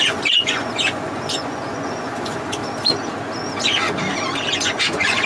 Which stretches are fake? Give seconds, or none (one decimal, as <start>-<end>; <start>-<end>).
0.0-2.6; 4.6-5.3